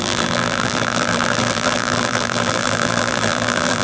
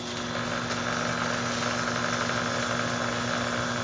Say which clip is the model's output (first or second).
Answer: first